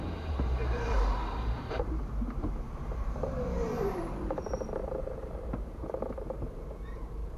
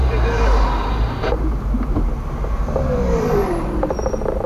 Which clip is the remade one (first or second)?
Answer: first